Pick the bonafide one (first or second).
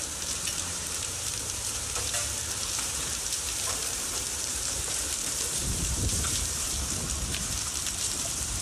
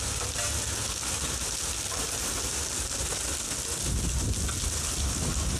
second